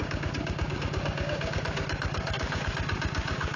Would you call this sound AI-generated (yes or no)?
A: yes